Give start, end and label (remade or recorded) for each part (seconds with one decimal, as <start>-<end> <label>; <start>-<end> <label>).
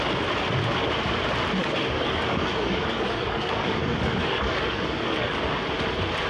0.0-1.6 recorded; 1.6-5.4 remade; 5.4-6.3 recorded